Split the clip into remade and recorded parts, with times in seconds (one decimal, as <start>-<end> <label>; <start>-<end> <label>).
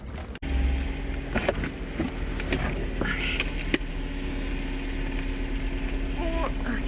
0.0-3.9 recorded; 3.9-4.5 remade; 4.5-6.9 recorded